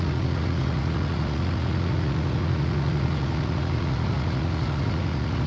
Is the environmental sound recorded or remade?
remade